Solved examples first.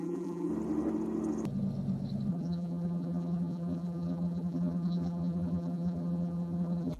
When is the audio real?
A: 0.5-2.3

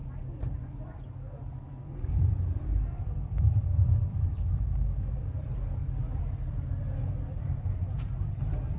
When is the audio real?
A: 5.8-7.4

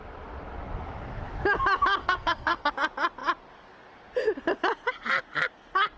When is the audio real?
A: 0.0-2.0; 2.7-6.0

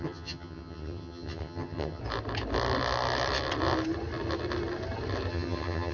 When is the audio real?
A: 2.0-5.3

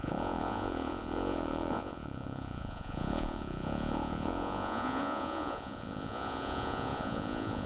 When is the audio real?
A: none

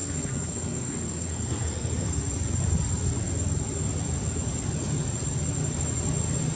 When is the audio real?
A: 2.2-6.6